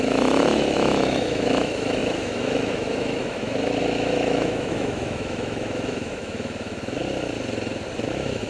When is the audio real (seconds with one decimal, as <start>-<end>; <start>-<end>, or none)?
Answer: 7.0-8.1